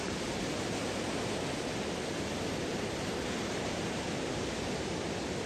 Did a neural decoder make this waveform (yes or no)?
no